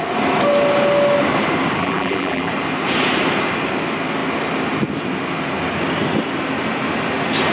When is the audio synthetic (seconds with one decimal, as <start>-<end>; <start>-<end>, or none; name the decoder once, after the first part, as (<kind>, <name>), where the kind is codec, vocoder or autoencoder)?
1.8-2.5 (vocoder, BigVGAN v2)